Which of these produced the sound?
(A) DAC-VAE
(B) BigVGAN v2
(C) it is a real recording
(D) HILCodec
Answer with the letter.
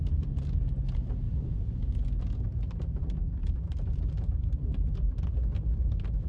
B